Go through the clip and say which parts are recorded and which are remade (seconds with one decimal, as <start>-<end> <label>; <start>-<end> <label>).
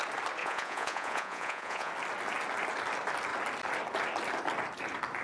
0.0-0.4 recorded; 0.4-1.9 remade; 1.9-5.2 recorded